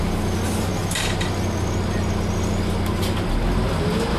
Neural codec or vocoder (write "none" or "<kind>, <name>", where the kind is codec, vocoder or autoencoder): none